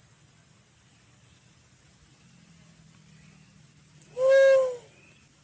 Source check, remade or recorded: recorded